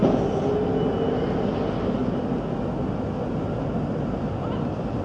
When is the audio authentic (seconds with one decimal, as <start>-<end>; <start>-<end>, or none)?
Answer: 0.0-2.0